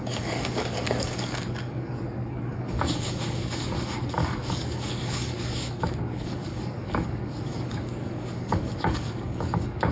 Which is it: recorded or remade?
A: remade